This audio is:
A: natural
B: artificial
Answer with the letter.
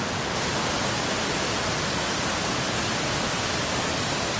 A